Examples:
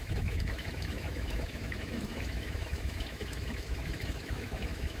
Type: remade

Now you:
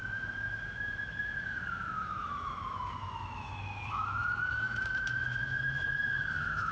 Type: remade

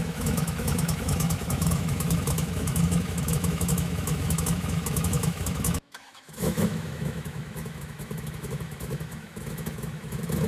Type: remade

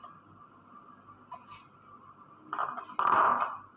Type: recorded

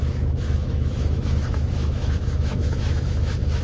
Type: remade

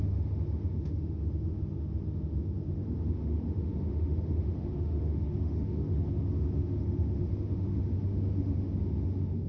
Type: remade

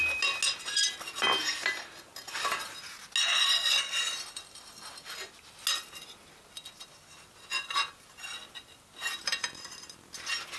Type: recorded